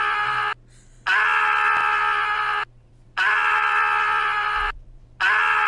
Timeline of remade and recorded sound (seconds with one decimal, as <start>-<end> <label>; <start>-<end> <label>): 0.0-1.8 recorded; 1.8-5.2 remade; 5.2-5.7 recorded